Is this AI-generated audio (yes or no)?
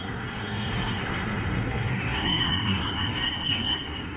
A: yes